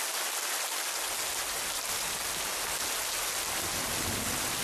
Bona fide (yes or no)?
yes